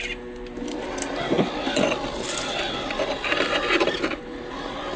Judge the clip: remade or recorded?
recorded